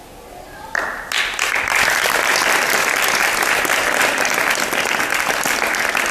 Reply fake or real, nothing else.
real